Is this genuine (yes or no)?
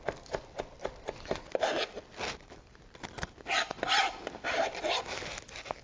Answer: yes